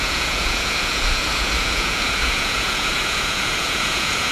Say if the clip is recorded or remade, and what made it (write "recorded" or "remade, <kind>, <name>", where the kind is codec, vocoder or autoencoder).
remade, vocoder, Vocos